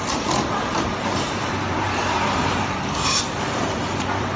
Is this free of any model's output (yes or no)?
no